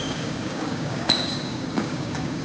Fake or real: fake